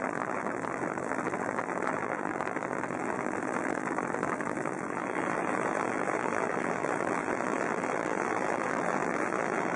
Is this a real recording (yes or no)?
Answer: no